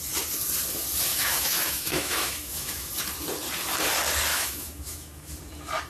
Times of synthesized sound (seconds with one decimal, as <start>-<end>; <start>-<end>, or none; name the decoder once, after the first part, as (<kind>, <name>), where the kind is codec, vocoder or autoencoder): 1.1-2.9 (autoencoder, DAC-VAE); 4.3-5.3